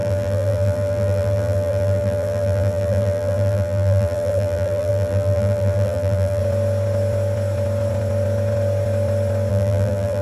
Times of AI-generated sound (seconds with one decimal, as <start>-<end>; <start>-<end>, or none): 0.0-6.4; 9.5-10.2